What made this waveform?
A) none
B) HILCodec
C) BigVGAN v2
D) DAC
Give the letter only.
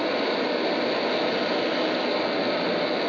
A